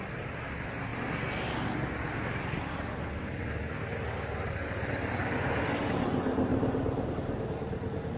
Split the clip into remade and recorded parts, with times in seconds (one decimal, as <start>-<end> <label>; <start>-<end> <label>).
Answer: 0.0-8.2 recorded